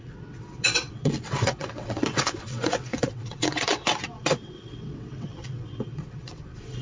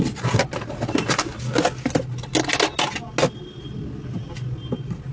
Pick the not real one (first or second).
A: first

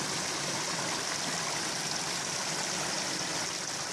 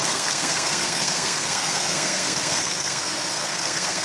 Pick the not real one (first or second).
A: second